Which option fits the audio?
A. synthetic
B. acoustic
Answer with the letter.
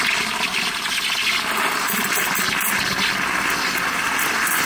B